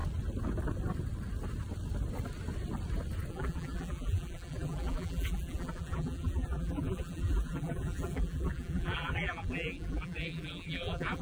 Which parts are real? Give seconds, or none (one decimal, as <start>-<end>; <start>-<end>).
0.0-3.3